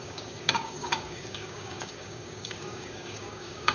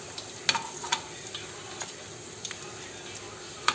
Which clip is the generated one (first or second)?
first